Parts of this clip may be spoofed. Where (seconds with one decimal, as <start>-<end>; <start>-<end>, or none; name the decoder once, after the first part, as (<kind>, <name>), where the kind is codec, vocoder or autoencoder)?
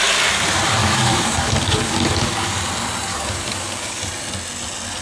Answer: 0.8-2.5 (codec, DAC); 3.1-4.0